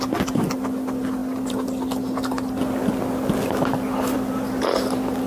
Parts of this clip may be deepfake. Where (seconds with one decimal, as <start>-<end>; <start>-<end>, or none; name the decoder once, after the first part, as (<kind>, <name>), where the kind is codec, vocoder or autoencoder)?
none